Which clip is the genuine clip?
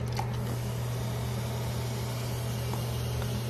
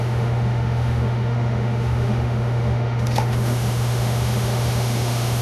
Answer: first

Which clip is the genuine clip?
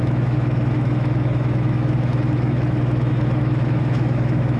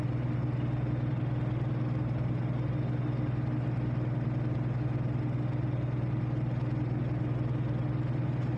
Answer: second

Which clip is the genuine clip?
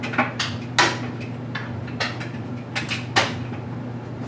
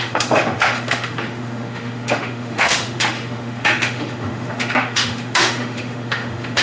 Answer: first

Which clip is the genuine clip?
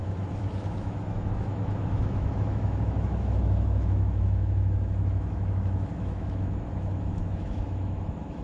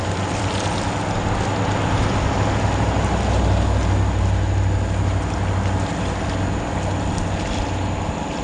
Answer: second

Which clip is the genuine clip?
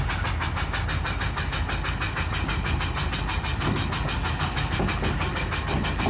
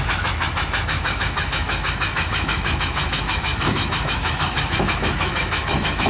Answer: first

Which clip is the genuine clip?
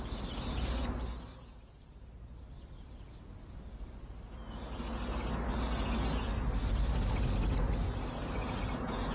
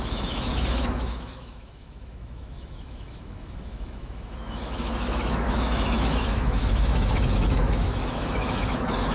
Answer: first